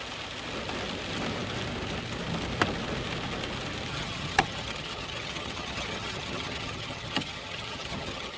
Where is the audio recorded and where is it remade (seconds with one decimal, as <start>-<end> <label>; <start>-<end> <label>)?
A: 0.0-3.9 recorded; 3.9-8.4 remade